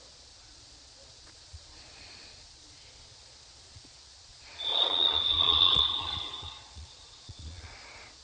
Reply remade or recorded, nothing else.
remade